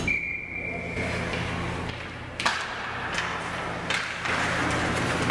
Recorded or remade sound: recorded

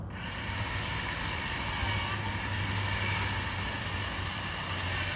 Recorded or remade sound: recorded